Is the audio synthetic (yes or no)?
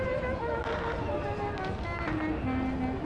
no